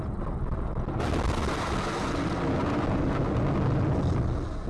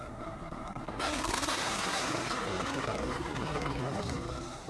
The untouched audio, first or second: first